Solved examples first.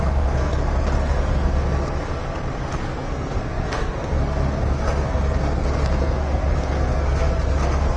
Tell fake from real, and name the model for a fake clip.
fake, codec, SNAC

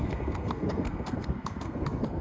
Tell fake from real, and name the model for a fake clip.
fake, codec, SNAC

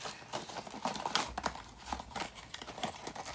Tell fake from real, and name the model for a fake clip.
real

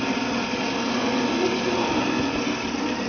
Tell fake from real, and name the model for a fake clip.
real